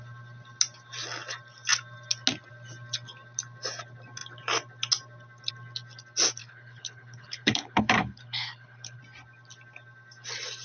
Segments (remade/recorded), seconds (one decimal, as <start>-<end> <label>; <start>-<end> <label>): 0.0-6.4 recorded; 6.4-9.0 remade; 9.0-10.6 recorded